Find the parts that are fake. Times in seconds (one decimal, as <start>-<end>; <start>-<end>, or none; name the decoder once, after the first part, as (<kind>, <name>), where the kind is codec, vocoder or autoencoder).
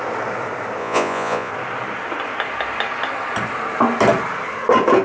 0.8-1.5 (vocoder, Vocos)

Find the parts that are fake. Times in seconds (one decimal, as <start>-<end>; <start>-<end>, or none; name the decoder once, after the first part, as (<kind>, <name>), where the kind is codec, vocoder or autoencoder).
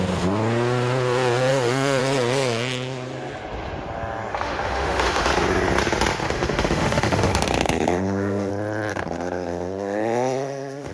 1.5-2.0 (autoencoder, DAC-VAE); 4.3-5.3; 6.2-8.5; 8.9-10.9